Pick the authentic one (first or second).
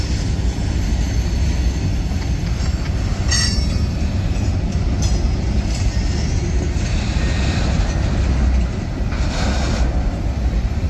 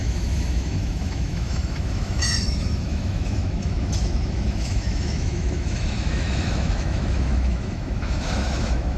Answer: first